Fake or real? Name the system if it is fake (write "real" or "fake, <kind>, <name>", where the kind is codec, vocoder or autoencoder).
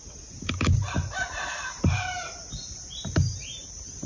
fake, vocoder, BigVGAN v2